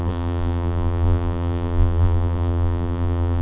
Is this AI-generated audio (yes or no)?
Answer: yes